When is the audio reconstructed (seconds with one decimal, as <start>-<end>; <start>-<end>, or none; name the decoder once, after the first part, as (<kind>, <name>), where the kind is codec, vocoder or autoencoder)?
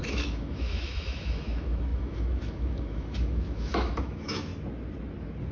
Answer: 0.0-4.5 (autoencoder, DAC-VAE)